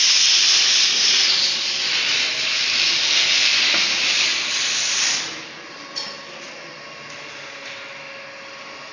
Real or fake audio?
real